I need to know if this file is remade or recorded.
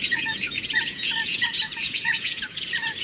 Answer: remade